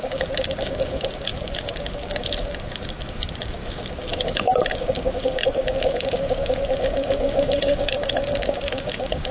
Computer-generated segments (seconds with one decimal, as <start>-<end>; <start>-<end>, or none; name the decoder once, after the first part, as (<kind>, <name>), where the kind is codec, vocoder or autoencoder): 0.0-9.3 (codec, DAC)